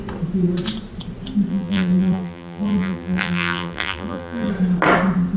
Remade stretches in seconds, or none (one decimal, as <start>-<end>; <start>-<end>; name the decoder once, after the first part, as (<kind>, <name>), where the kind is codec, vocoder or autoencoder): 1.5-4.5 (vocoder, BigVGAN v2)